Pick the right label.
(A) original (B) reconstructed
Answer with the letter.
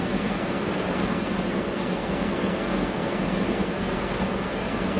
B